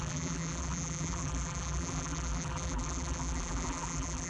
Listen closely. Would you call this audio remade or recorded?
remade